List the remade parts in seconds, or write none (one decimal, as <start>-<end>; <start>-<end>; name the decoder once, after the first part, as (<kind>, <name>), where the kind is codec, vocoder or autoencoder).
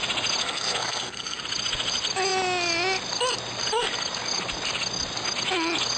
0.4-1.4 (codec, SNAC)